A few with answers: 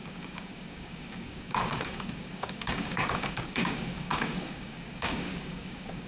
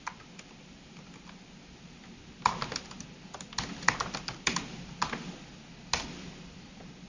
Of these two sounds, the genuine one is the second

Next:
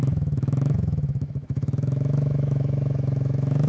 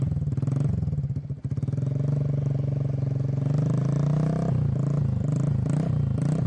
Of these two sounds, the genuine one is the second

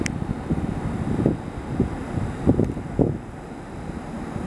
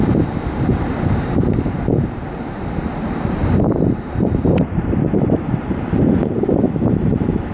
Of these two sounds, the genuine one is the first